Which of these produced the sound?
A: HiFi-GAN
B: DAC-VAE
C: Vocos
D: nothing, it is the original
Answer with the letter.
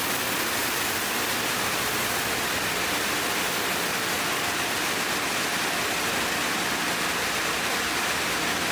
D